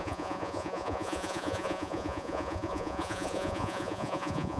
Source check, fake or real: fake